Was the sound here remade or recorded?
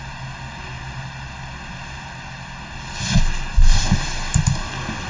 recorded